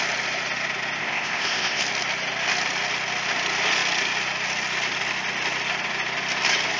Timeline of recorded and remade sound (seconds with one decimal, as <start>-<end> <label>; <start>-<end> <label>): 0.0-1.0 recorded; 1.0-1.8 remade; 1.8-6.8 recorded